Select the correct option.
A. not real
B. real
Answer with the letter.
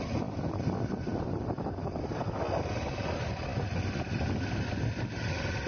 B